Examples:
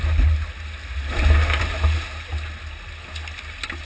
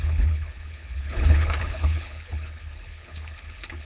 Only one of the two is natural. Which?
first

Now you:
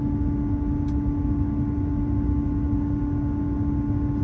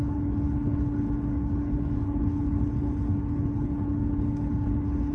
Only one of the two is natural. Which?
first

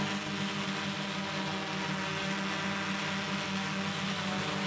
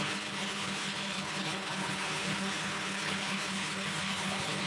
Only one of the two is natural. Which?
first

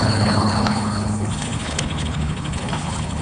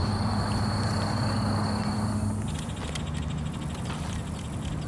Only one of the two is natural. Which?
second